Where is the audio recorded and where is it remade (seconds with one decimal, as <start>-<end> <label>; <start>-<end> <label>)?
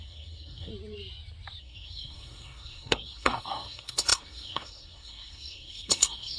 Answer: 0.0-0.7 remade; 0.7-1.6 recorded; 1.6-6.4 remade